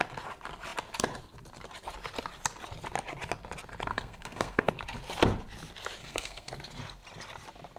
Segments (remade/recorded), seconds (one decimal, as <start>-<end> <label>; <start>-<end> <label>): 0.0-3.9 recorded; 3.9-4.7 remade; 4.7-6.0 recorded; 6.0-6.5 remade; 6.5-7.8 recorded